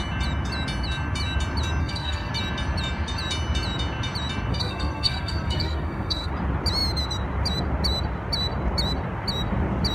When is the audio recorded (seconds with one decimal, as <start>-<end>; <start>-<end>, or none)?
0.0-1.8; 2.3-4.5; 6.3-9.9